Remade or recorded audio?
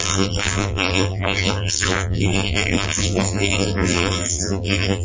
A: remade